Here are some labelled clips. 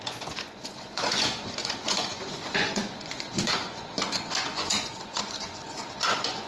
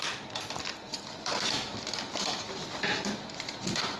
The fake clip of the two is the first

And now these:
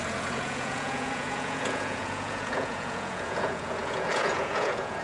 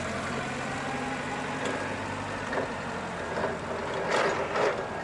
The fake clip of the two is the first